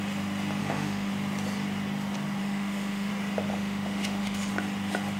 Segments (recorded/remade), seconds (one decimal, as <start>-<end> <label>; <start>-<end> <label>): 0.0-0.6 recorded; 0.6-1.1 remade; 1.1-2.4 recorded; 2.4-3.1 remade; 3.1-3.5 recorded; 3.5-4.5 remade; 4.5-5.2 recorded